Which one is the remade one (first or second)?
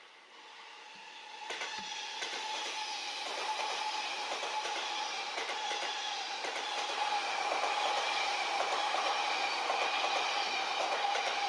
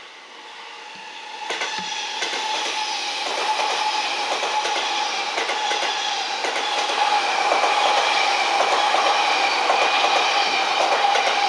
first